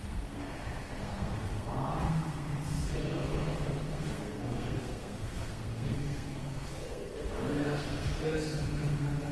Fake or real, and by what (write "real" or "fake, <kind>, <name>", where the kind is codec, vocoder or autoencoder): fake, codec, SNAC